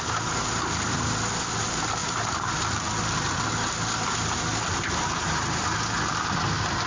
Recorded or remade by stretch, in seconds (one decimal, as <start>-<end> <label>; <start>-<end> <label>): 0.0-2.0 recorded; 2.0-2.8 remade; 2.8-4.5 recorded; 4.5-5.6 remade; 5.6-6.9 recorded